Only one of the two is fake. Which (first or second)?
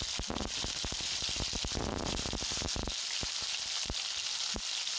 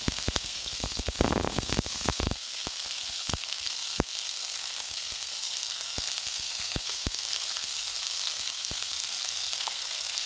second